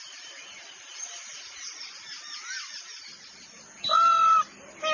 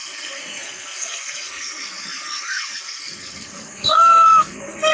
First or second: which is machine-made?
second